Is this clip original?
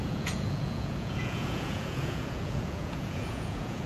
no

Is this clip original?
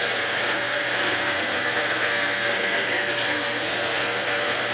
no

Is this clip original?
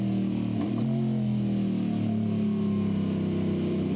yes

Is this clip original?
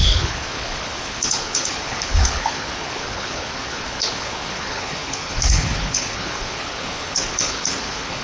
no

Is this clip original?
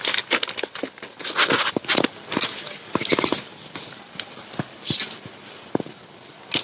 yes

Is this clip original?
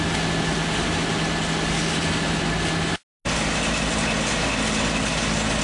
yes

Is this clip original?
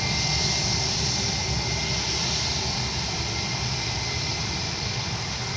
no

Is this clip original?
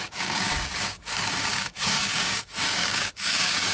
no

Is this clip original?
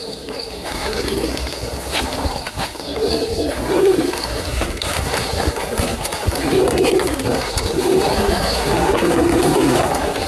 no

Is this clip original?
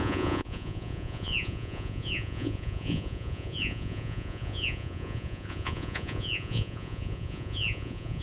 no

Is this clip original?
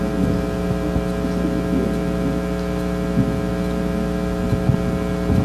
yes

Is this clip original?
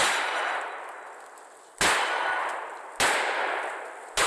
yes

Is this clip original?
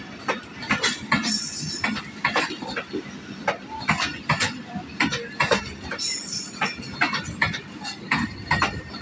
yes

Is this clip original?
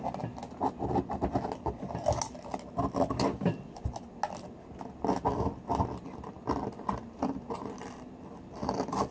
yes